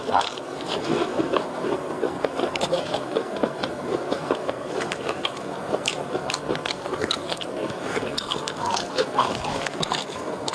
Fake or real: fake